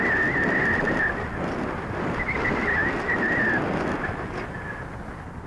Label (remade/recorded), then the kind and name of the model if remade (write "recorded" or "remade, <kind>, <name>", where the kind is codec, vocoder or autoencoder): recorded